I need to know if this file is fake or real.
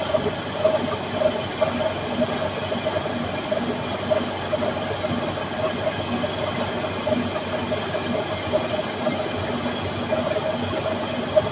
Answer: real